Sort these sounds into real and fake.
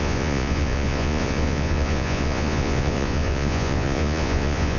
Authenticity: fake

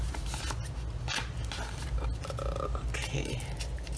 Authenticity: real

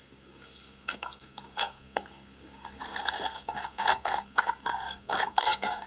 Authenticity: fake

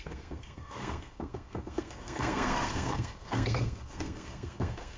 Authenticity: fake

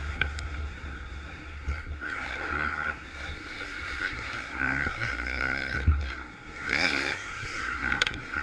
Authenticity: fake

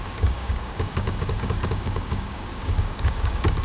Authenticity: fake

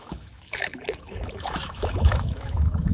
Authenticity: fake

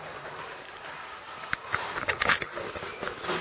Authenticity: real